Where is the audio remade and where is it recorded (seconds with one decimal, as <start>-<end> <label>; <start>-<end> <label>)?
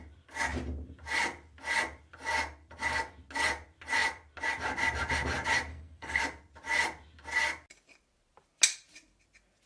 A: 0.0-5.7 recorded; 5.7-6.2 remade; 6.2-9.7 recorded